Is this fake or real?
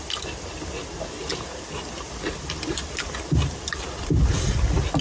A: real